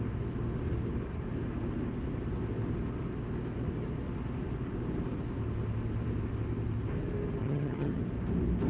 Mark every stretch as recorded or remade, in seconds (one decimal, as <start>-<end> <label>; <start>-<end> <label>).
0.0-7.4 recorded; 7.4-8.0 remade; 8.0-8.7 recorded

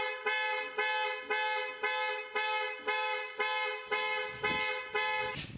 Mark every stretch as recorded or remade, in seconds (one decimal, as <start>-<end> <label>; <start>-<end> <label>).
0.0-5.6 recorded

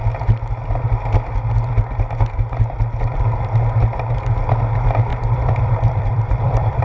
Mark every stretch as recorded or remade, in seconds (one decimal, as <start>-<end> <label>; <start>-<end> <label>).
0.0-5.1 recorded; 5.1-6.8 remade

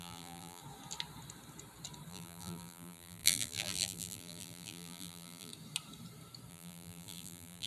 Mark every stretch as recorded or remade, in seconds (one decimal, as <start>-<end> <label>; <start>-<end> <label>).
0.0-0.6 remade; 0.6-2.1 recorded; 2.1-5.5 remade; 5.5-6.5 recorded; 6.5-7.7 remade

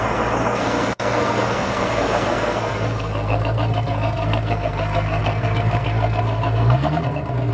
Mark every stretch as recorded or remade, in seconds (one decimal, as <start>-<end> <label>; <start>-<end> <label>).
0.0-7.5 remade

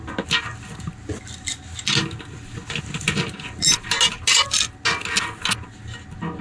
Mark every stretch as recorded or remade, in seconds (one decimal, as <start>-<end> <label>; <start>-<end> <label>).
0.0-6.4 recorded

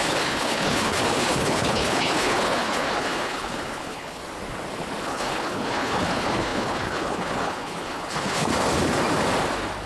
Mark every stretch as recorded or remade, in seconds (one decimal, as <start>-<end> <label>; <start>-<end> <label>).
0.0-4.2 remade; 4.2-5.0 recorded; 5.0-8.5 remade; 8.5-9.9 recorded